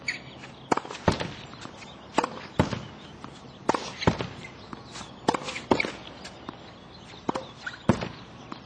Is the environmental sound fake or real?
real